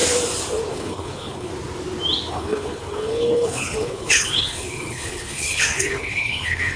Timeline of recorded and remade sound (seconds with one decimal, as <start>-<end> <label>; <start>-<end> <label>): 0.0-0.7 recorded; 0.7-1.5 remade; 1.5-2.3 recorded; 2.3-6.8 remade